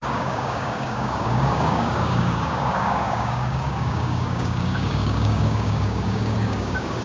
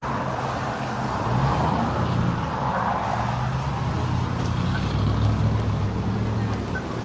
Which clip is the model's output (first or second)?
first